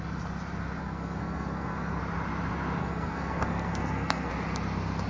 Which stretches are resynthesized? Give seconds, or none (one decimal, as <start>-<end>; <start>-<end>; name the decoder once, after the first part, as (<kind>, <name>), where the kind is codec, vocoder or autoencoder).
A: 0.8-2.0 (codec, SNAC); 2.8-4.3